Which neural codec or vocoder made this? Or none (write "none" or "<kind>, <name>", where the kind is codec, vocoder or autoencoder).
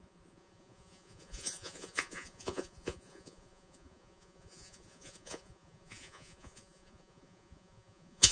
vocoder, Vocos